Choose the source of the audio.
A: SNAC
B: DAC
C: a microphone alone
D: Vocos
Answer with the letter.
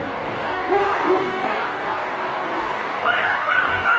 B